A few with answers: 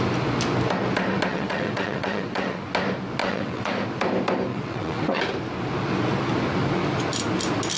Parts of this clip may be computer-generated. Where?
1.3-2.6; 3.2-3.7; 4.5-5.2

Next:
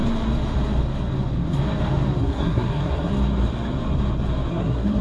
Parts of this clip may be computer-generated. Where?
2.2-3.1; 4.5-5.0

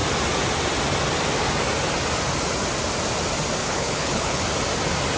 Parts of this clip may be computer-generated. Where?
3.6-4.4

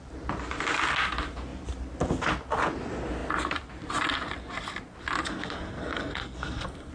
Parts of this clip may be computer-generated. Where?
5.2-6.9

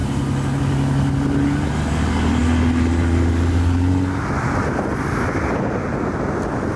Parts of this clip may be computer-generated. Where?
none

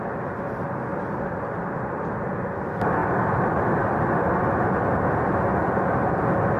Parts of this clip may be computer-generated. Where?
none

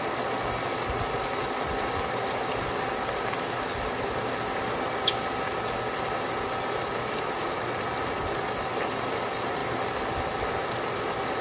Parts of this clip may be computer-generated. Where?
none

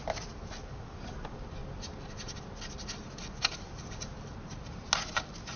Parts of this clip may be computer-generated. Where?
none